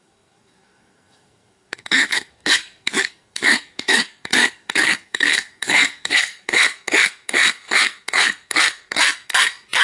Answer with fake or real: fake